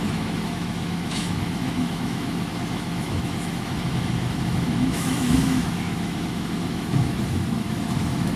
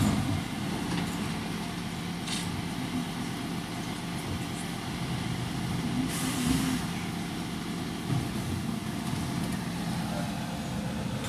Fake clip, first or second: first